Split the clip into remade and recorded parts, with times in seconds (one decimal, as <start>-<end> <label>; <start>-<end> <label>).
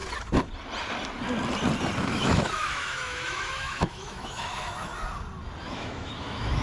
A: 0.0-2.0 recorded; 2.0-4.9 remade; 4.9-5.6 recorded; 5.6-6.6 remade